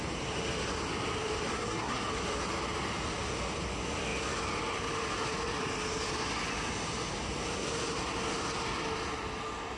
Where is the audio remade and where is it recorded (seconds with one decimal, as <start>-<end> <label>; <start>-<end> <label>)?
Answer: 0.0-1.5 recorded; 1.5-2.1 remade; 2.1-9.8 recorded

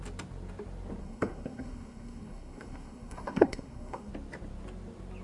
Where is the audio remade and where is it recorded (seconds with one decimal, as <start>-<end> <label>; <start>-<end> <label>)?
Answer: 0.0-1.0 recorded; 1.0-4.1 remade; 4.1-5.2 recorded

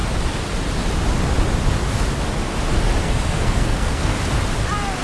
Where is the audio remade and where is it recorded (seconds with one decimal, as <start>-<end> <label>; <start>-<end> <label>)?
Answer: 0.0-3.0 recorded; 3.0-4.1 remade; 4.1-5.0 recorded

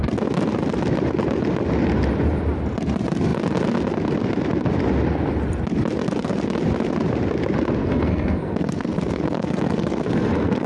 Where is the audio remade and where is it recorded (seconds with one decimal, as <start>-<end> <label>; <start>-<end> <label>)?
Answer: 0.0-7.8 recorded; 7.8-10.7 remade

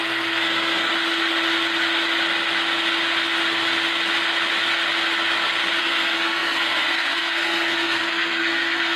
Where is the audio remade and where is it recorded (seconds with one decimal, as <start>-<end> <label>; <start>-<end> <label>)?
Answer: 0.0-0.9 remade; 0.9-5.8 recorded; 5.8-9.0 remade

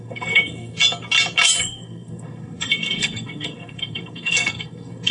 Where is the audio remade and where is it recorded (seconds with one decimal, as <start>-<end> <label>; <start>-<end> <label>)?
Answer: 0.0-0.8 remade; 0.8-1.6 recorded; 1.6-5.1 remade

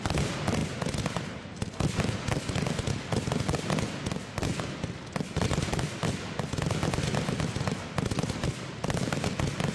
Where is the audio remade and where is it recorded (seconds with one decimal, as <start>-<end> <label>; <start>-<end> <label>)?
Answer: 0.0-9.7 recorded